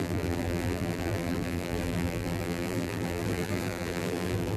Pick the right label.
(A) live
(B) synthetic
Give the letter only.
B